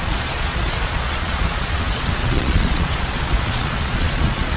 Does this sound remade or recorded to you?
remade